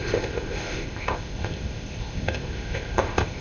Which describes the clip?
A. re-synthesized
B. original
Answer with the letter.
A